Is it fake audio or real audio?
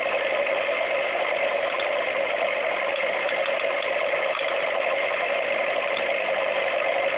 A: real